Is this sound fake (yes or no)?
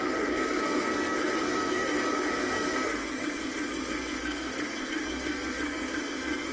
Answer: yes